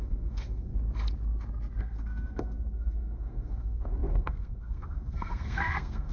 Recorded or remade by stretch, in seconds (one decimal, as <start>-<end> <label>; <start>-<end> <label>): 0.0-0.7 remade; 0.7-1.8 recorded; 1.8-6.1 remade